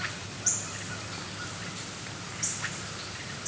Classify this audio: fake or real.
fake